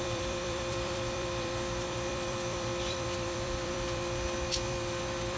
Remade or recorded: remade